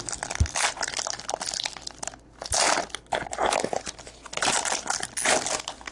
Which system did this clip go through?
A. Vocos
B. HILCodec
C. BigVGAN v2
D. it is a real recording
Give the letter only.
D